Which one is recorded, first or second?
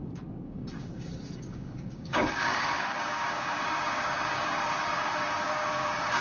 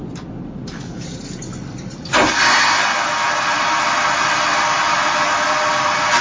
second